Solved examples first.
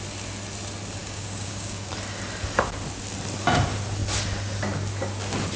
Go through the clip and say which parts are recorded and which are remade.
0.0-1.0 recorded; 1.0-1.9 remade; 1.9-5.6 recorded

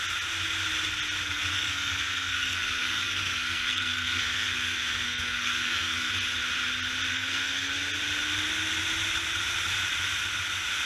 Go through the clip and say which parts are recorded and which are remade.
0.0-1.3 recorded; 1.3-6.1 remade; 6.1-7.1 recorded; 7.1-7.7 remade; 7.7-10.9 recorded

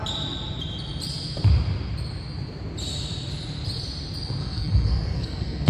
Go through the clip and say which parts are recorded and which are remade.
0.0-4.4 recorded; 4.4-5.7 remade